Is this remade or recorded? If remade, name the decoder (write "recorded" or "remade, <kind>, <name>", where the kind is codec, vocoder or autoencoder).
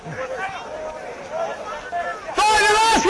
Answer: recorded